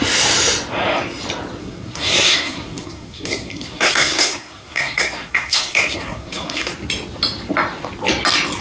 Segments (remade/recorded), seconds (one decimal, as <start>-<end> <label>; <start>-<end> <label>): 0.0-1.6 recorded; 1.6-6.7 remade; 6.7-8.6 recorded